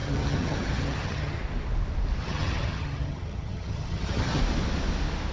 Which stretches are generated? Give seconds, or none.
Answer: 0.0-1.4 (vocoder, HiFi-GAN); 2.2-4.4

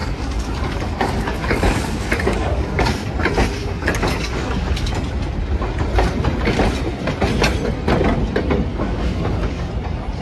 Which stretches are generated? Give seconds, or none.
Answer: 0.0-3.1 (codec, DAC); 3.6-4.9; 8.7-9.7

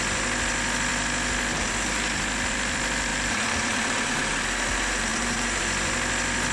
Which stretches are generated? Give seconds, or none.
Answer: 3.1-4.3 (vocoder, BigVGAN v2); 5.1-5.6

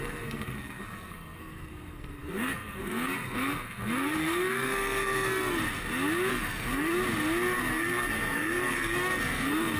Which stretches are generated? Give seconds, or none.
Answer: 0.0-5.6 (codec, SNAC); 6.3-6.9; 7.6-9.8